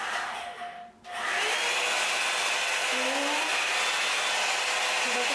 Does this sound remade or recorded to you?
recorded